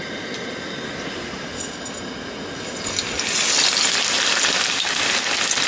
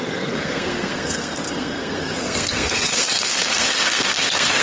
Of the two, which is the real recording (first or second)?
first